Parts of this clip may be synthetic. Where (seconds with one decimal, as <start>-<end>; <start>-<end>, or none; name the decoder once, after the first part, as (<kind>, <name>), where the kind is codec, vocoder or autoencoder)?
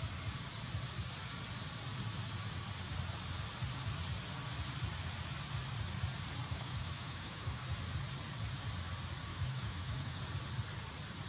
6.5-7.6 (autoencoder, DAC-VAE); 9.3-10.2